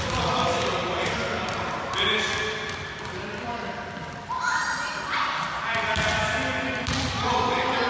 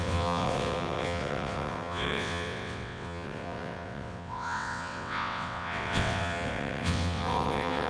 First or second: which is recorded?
first